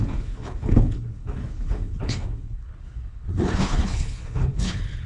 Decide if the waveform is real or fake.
fake